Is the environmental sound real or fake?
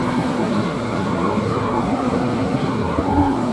fake